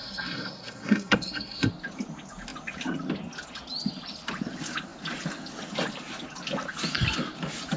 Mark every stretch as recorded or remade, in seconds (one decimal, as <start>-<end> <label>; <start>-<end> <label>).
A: 0.0-1.7 remade; 1.7-7.8 recorded